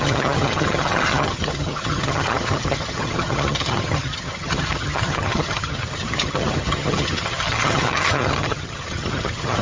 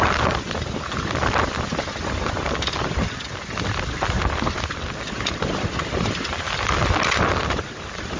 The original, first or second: second